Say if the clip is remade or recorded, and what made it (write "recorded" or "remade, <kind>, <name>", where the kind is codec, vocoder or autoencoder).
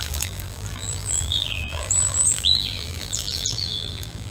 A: remade, vocoder, BigVGAN v2